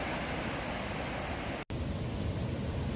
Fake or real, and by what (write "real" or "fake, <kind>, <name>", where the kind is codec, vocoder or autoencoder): real